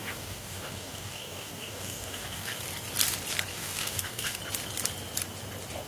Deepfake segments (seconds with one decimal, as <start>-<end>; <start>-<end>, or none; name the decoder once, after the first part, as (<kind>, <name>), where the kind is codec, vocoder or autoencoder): 0.0-2.6 (codec, DAC); 3.5-4.4